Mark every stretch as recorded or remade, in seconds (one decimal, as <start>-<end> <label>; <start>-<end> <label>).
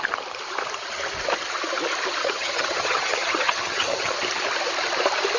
0.0-2.2 recorded; 2.2-4.1 remade; 4.1-5.4 recorded